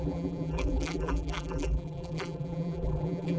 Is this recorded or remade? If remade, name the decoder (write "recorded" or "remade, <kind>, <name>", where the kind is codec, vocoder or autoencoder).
remade, vocoder, BigVGAN v2